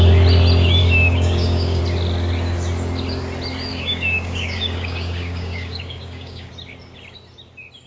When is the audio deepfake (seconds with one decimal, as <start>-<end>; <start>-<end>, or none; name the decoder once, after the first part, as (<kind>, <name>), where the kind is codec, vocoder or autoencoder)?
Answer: 0.8-1.8 (codec, DAC); 3.7-6.5